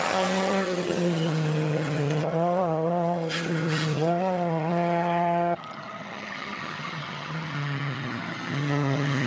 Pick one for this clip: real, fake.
fake